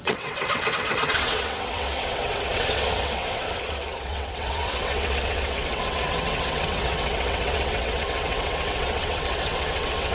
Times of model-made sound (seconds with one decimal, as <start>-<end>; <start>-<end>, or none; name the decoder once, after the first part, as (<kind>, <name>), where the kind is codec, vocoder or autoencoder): 0.0-10.1 (vocoder, WaveNeXt)